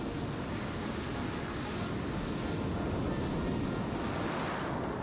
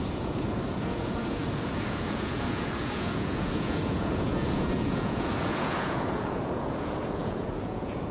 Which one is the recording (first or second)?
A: first